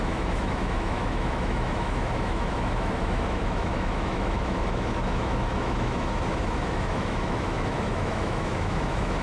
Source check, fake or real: fake